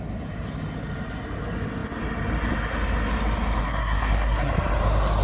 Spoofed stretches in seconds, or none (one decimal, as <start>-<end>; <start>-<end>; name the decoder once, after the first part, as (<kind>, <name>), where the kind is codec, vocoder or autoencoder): 3.6-4.5 (codec, SNAC)